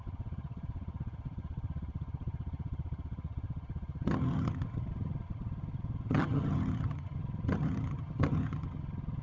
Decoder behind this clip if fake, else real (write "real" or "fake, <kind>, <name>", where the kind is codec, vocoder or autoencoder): fake, vocoder, HiFi-GAN